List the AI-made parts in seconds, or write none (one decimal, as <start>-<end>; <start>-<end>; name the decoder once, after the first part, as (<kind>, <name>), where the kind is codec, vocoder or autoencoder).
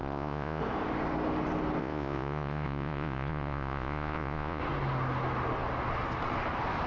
0.0-0.6 (vocoder, Vocos); 1.8-4.6